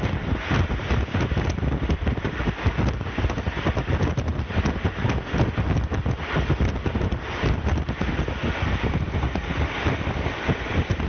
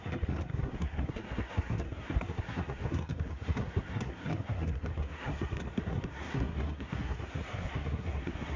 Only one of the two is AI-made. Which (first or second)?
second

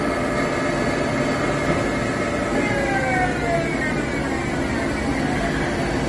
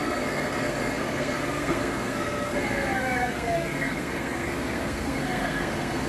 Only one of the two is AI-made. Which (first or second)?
second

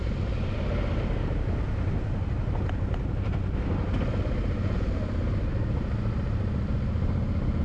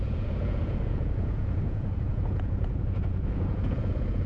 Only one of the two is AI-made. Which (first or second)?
second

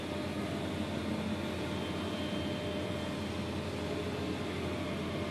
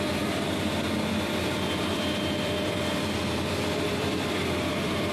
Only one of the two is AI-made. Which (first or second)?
second